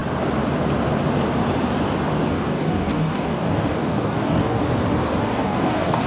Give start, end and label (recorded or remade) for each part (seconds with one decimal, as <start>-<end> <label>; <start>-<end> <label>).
0.0-2.3 recorded; 2.3-4.6 remade; 4.6-5.2 recorded; 5.2-6.1 remade